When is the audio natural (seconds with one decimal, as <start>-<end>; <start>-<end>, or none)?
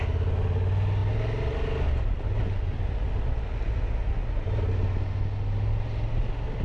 0.0-6.6